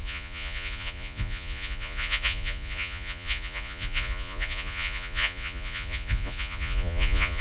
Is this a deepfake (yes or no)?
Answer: yes